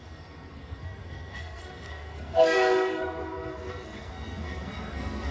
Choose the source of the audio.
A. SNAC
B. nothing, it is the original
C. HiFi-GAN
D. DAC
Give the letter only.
A